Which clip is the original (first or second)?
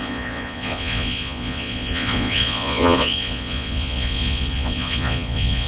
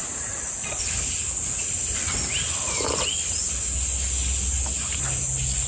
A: second